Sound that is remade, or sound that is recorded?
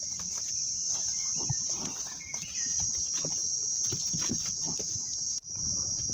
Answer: remade